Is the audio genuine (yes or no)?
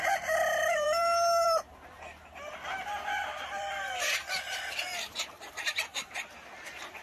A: no